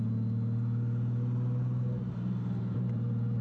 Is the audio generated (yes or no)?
no